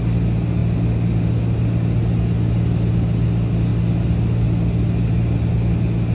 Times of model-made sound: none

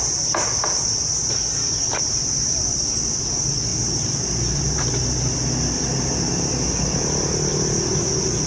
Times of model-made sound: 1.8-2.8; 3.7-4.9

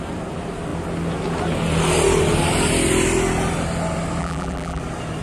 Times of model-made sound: 4.2-4.8

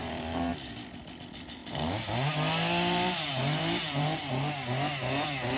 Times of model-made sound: 0.0-0.5; 1.6-4.3

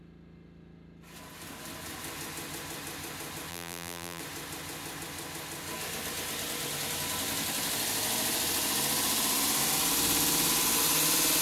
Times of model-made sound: 3.5-4.2

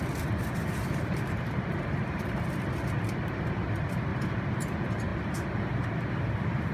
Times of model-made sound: 0.6-2.2; 4.1-4.6

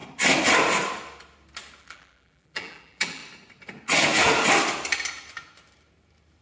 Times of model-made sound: 1.8-3.2